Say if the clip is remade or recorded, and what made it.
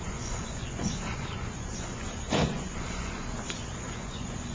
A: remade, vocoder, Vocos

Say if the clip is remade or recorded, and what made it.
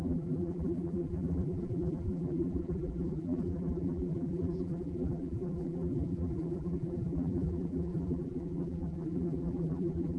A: remade, vocoder, BigVGAN v2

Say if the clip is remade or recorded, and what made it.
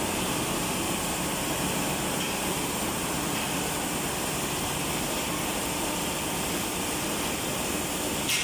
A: recorded